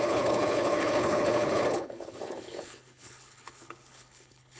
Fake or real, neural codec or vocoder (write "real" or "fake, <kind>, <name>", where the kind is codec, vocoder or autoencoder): fake, codec, HILCodec